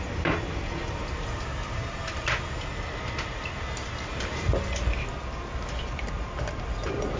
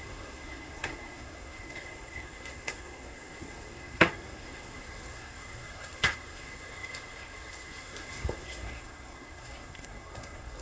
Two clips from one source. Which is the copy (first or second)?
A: second